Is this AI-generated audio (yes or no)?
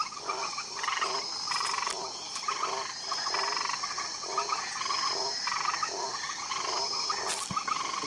no